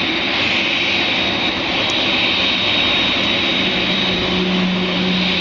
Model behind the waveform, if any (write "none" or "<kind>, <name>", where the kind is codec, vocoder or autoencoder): none